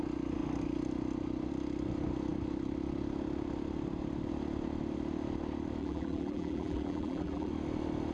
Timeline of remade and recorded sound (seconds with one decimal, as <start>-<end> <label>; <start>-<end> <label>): 0.0-5.8 recorded; 5.8-7.5 remade; 7.5-8.1 recorded